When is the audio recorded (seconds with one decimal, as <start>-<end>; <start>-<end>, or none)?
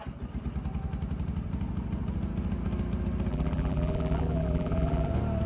0.0-3.3; 5.1-5.5